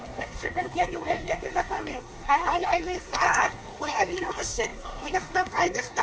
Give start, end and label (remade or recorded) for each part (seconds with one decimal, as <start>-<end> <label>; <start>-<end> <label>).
0.0-6.0 remade